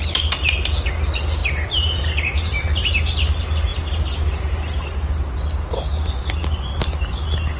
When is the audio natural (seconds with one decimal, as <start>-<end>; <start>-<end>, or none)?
0.0-1.4; 2.8-7.6